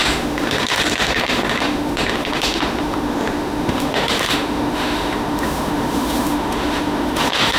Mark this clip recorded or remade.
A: remade